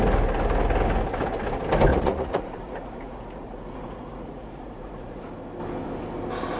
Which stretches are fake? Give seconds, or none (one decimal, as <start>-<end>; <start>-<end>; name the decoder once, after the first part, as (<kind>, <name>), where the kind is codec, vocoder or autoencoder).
1.9-5.2 (vocoder, Vocos)